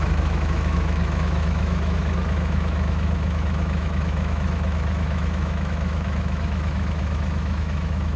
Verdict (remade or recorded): remade